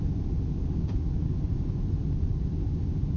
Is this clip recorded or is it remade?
recorded